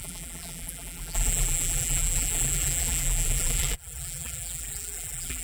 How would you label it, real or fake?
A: fake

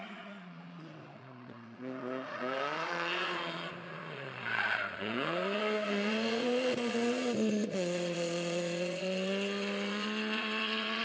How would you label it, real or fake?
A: fake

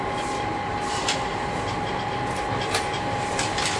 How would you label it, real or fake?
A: real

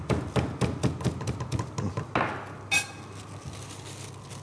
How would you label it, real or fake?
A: real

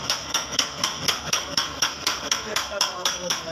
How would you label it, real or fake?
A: fake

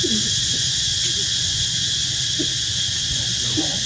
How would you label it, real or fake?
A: fake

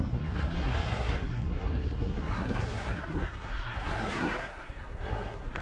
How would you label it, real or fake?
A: fake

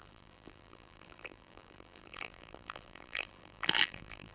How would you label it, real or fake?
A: fake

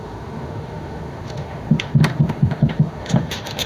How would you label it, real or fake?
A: fake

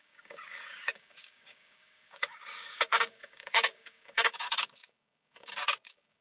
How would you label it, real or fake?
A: fake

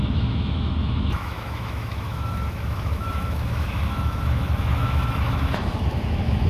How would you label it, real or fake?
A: fake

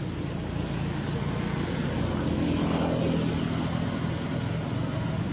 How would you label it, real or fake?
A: real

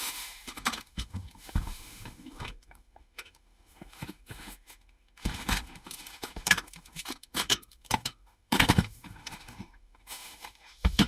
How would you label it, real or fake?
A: fake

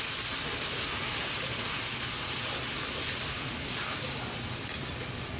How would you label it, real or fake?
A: real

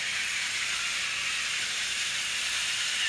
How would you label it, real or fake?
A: real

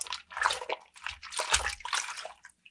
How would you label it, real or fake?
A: real